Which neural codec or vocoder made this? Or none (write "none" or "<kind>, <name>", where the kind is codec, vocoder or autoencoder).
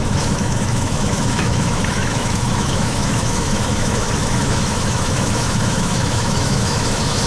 autoencoder, DAC-VAE